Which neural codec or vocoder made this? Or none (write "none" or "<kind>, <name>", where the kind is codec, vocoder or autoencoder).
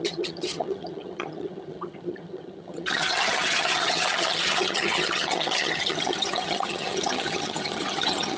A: vocoder, HiFi-GAN